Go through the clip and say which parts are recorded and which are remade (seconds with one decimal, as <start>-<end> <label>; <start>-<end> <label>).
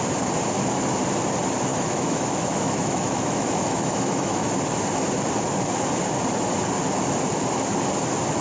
0.0-1.7 recorded; 1.7-4.5 remade; 4.5-8.4 recorded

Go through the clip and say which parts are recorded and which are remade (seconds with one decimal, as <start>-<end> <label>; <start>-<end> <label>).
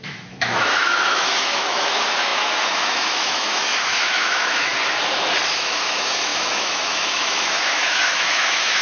0.0-4.7 remade; 4.7-5.5 recorded; 5.5-8.8 remade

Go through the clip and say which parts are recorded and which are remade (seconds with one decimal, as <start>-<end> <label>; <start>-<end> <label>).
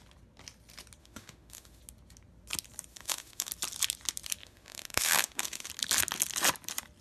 0.0-1.0 recorded; 1.0-1.8 remade; 1.8-2.9 recorded; 2.9-3.5 remade; 3.5-4.4 recorded; 4.4-5.7 remade; 5.7-7.0 recorded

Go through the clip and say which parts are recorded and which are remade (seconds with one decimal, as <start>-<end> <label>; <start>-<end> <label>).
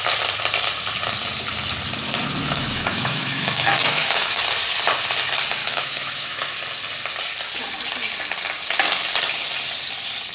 0.0-2.4 recorded; 2.4-4.4 remade; 4.4-5.6 recorded; 5.6-6.6 remade; 6.6-10.3 recorded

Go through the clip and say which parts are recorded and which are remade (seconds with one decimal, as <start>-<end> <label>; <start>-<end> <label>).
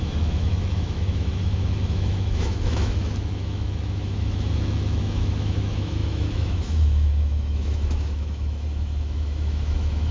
0.0-10.1 remade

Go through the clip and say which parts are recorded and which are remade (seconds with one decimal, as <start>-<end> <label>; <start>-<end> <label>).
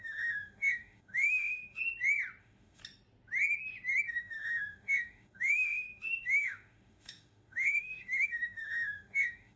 0.0-1.8 remade; 1.8-2.4 recorded; 2.4-2.8 remade; 2.8-4.1 recorded; 4.1-9.6 remade